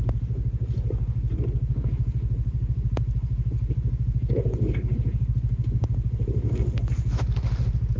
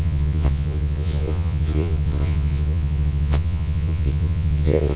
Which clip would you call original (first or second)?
first